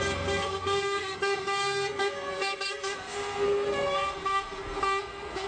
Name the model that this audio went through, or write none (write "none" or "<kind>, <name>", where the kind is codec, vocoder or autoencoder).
codec, SNAC